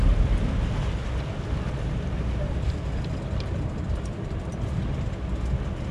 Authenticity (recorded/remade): recorded